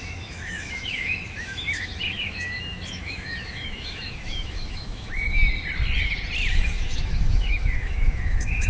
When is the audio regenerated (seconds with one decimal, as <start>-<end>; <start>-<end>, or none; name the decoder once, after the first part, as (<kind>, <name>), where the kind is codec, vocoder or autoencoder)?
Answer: 0.0-5.4 (autoencoder, DAC-VAE); 6.5-8.7